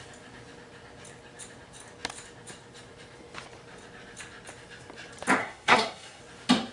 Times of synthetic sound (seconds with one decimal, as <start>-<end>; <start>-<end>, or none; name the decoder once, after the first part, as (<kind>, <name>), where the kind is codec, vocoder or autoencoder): 5.4-6.2 (codec, SNAC)